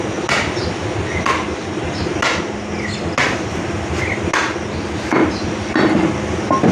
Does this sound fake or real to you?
real